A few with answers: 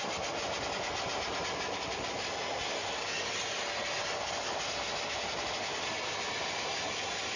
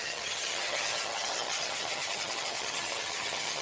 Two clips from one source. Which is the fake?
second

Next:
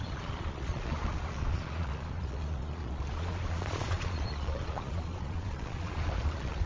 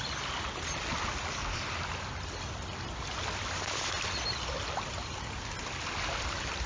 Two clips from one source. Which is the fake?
first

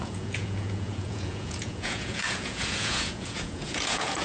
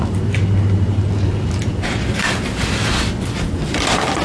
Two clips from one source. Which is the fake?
first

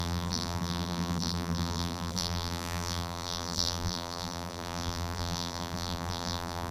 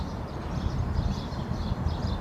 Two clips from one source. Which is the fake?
first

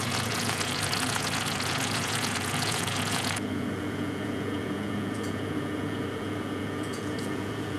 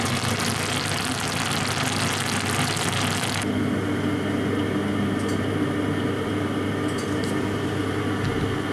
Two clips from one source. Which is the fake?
first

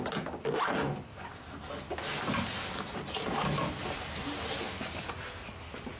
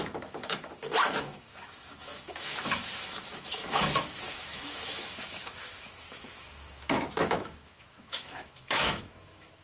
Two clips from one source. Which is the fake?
second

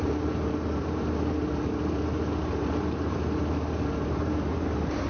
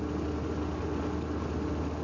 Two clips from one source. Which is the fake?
first